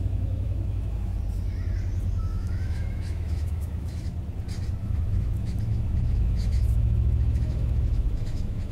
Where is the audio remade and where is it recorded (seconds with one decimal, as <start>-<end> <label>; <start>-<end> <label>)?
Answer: 0.0-1.1 remade; 1.1-2.2 recorded; 2.2-4.1 remade; 4.1-4.8 recorded; 4.8-8.7 remade